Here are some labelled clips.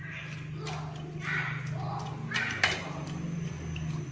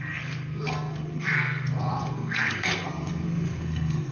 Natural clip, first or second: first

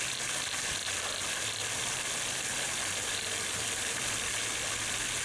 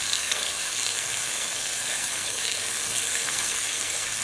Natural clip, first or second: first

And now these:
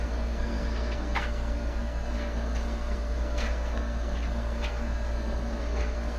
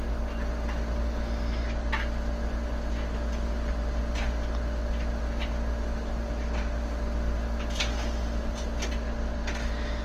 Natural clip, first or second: second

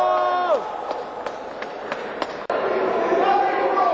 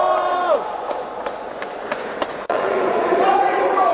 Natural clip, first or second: first